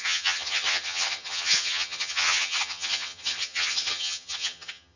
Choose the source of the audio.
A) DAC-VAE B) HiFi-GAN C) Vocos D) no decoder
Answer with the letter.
B